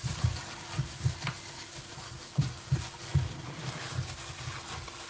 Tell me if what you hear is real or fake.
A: real